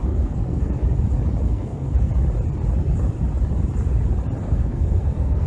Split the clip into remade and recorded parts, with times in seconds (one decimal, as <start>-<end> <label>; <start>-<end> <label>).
0.0-0.8 remade; 0.8-1.4 recorded; 1.4-2.1 remade; 2.1-4.4 recorded; 4.4-5.5 remade